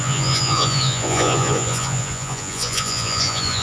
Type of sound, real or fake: fake